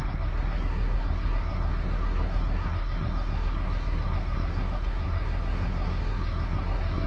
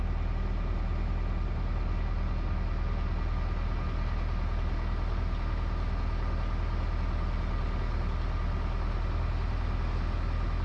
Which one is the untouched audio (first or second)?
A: second